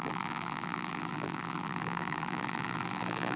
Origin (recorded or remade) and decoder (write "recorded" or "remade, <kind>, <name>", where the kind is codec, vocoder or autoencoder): remade, vocoder, BigVGAN v2